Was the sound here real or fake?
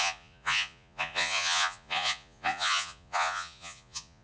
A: fake